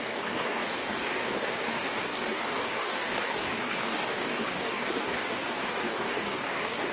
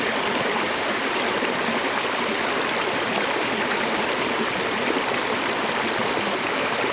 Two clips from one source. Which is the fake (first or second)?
first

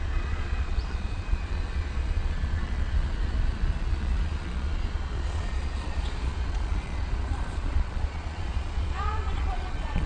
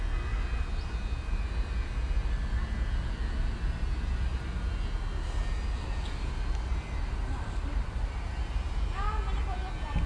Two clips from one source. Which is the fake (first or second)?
first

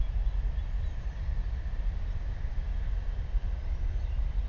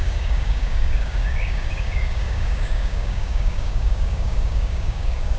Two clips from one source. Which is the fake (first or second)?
second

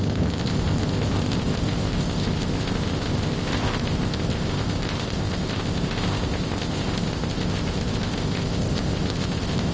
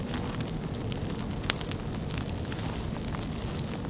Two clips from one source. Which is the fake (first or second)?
first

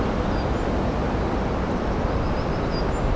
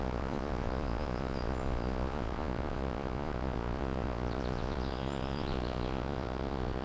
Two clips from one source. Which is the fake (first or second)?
second